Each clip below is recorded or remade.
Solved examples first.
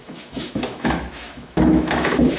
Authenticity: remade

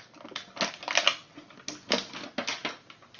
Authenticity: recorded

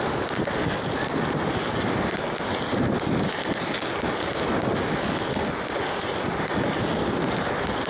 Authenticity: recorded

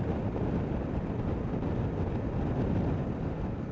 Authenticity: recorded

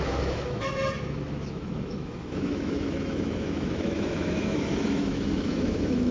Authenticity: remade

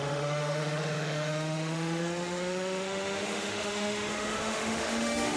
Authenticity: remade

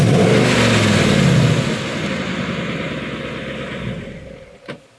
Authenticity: recorded